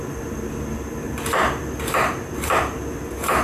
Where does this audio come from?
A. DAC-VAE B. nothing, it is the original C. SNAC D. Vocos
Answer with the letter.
B